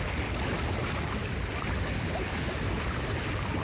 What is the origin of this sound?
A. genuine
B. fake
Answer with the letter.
A